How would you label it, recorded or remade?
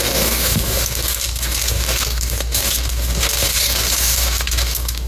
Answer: remade